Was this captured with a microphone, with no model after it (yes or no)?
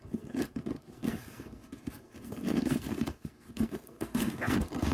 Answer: no